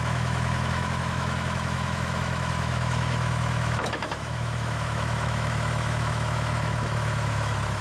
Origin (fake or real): fake